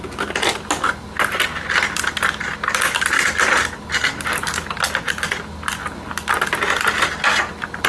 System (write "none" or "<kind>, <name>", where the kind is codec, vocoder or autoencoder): none